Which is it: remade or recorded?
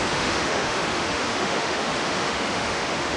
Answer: remade